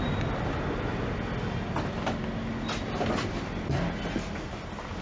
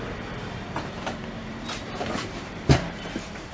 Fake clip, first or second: second